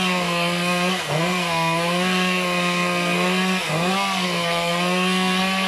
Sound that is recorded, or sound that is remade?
remade